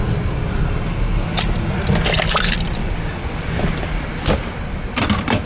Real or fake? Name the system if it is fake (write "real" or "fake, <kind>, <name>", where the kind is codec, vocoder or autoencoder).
real